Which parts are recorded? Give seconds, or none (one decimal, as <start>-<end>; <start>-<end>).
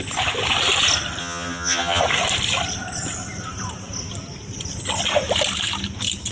0.0-1.2; 2.0-6.3